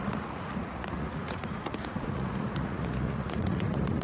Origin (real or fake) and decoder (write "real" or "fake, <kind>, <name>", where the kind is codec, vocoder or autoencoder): fake, vocoder, Vocos